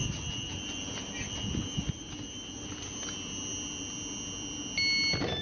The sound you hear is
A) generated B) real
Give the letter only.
B